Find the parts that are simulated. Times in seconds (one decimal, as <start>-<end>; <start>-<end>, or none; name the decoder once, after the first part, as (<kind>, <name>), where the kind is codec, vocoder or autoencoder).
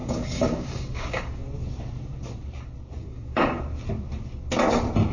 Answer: 0.0-1.4 (codec, DAC); 3.0-3.6